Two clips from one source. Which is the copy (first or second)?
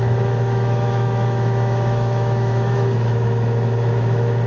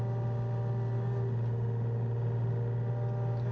first